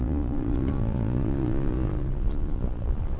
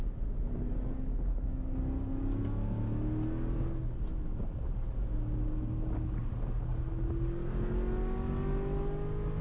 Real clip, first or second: second